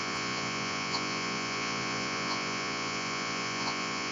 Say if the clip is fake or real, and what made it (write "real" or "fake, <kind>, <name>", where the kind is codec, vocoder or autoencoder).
fake, vocoder, Vocos